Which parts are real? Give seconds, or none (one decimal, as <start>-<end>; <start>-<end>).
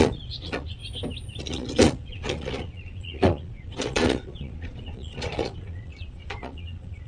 0.8-1.4